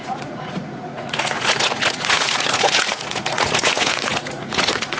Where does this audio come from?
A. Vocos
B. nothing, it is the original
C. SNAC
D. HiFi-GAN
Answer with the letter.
A